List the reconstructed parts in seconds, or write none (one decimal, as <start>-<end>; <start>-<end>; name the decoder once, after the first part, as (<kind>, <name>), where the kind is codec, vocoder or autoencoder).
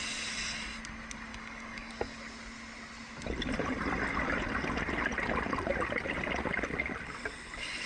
1.3-1.9 (codec, DAC)